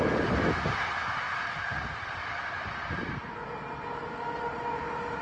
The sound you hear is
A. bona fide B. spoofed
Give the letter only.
A